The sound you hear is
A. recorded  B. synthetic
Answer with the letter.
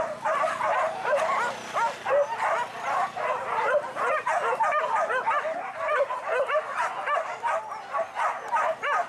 A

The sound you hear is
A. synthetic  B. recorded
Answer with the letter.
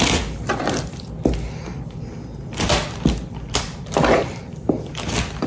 B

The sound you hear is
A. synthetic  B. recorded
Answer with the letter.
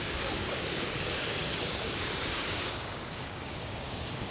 A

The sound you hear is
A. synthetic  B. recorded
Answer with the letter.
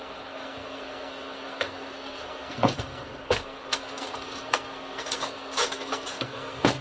A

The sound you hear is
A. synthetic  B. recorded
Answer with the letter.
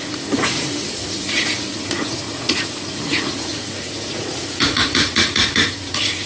A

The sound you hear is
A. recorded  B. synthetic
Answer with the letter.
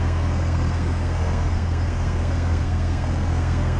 B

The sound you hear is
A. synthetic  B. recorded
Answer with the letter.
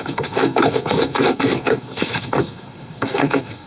A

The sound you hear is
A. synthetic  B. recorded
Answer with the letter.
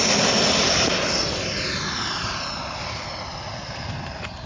B